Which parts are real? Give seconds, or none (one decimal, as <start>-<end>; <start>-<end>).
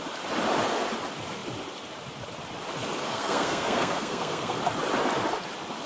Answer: 0.0-3.0; 4.6-5.9